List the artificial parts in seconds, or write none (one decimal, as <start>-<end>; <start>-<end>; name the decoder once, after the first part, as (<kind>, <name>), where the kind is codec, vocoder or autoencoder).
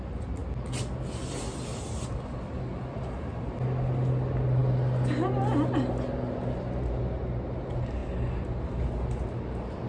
none